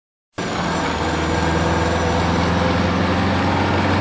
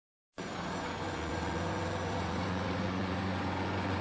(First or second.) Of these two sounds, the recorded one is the first